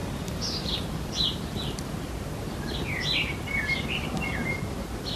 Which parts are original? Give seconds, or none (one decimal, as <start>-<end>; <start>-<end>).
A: 1.1-5.2